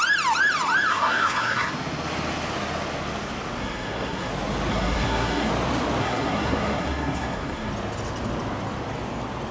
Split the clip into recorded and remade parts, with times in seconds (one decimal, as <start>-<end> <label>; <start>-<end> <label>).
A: 0.0-0.9 recorded; 0.9-1.7 remade; 1.7-3.6 recorded; 3.6-4.3 remade; 4.3-4.7 recorded; 4.7-5.5 remade; 5.5-6.0 recorded; 6.0-7.7 remade; 7.7-9.5 recorded